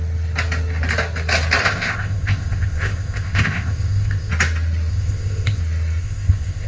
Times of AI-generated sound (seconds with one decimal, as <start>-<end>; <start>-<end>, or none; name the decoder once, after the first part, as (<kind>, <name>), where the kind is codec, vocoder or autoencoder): 1.6-4.3 (codec, ZipCodec); 4.9-5.6; 6.0-6.7